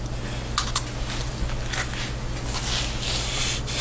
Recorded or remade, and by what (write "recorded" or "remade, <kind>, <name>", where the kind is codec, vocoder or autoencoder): recorded